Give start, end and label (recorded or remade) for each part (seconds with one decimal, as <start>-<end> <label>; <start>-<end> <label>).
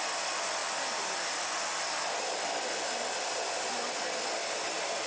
0.0-5.1 recorded